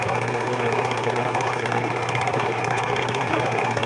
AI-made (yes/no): yes